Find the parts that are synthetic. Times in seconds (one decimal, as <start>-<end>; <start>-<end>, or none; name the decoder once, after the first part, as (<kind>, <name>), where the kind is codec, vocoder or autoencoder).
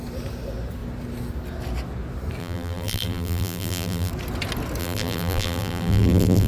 2.4-4.1 (vocoder, BigVGAN v2); 4.8-6.5